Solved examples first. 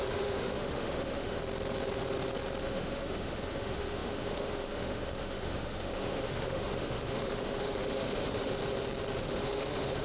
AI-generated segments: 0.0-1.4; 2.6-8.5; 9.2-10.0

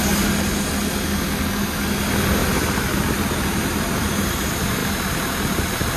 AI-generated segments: 4.8-5.6